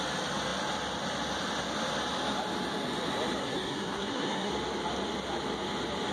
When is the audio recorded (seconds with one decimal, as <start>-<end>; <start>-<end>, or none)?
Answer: 0.0-3.4; 4.5-6.1